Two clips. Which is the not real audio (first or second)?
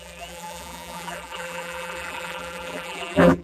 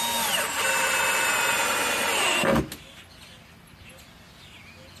first